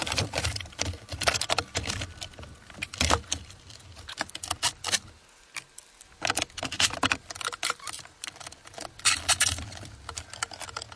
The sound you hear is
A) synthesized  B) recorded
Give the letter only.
B